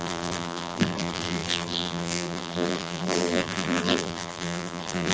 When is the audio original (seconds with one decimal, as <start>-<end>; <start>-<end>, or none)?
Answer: none